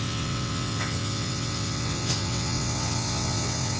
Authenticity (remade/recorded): remade